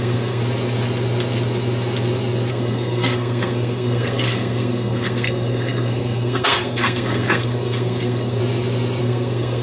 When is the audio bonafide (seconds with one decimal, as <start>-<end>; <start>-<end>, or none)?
0.4-2.5; 8.4-9.0